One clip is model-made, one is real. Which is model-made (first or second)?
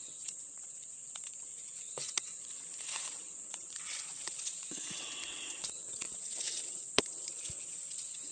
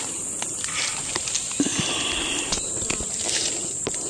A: first